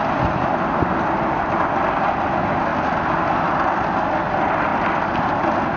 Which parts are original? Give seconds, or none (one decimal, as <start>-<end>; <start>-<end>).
0.0-5.8